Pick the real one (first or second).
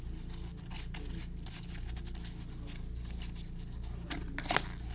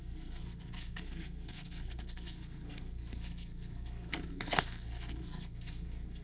first